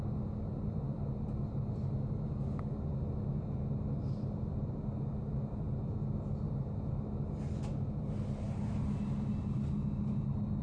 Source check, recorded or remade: recorded